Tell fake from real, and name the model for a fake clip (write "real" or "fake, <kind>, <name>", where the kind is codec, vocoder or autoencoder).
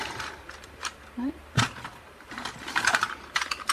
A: fake, vocoder, BigVGAN v2